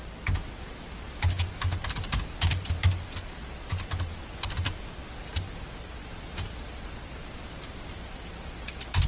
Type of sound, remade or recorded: recorded